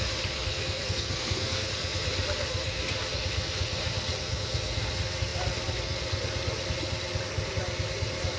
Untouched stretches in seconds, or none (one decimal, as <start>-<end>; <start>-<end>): 0.0-0.5; 1.7-8.4